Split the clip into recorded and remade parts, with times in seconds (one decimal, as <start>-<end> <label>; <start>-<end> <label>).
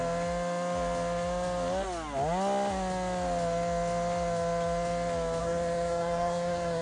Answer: 0.0-5.4 recorded; 5.4-6.8 remade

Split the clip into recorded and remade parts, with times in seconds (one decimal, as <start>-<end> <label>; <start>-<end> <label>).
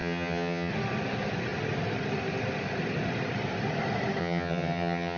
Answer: 0.0-0.7 remade; 0.7-4.2 recorded; 4.2-5.2 remade